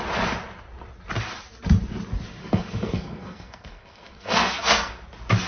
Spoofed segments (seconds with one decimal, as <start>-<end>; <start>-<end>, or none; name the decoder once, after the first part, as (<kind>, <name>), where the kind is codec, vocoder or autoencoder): 2.4-5.0 (codec, SNAC)